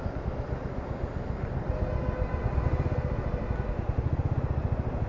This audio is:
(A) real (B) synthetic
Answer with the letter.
A